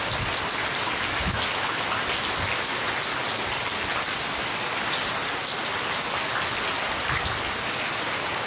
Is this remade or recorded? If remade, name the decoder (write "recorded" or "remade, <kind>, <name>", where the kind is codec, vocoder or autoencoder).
recorded